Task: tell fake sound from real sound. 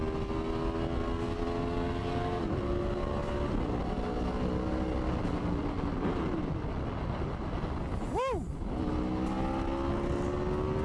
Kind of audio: real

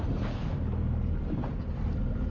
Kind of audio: real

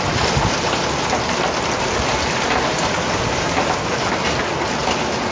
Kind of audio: real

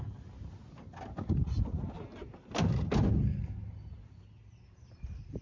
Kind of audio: real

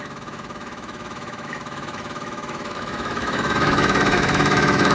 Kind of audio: fake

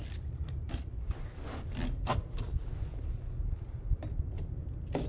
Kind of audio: real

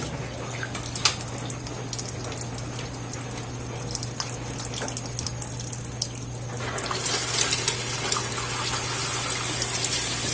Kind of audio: real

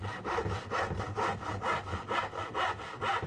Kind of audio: real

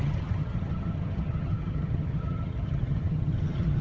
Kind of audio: fake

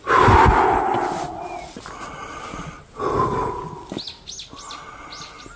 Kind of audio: real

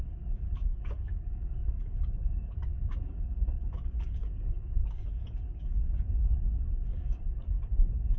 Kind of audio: fake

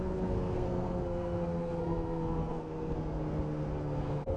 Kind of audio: fake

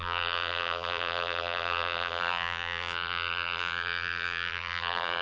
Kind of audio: fake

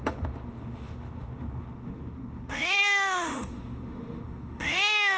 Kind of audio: fake